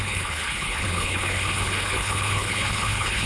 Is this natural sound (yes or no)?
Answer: no